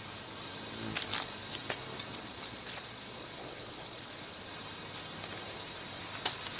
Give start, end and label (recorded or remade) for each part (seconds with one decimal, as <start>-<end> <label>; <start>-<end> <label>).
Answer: 0.0-2.1 recorded; 2.1-4.2 remade; 4.2-6.6 recorded